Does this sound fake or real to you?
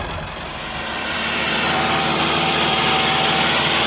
fake